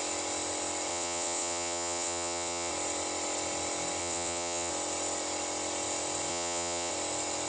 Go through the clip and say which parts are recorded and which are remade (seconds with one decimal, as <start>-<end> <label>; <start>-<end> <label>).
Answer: 0.0-0.9 recorded; 0.9-2.7 remade; 2.7-4.0 recorded; 4.0-4.7 remade; 4.7-6.3 recorded; 6.3-6.9 remade; 6.9-7.5 recorded